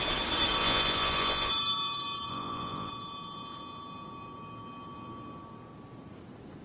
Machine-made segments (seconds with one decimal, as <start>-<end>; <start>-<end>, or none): 0.6-1.5; 2.3-2.9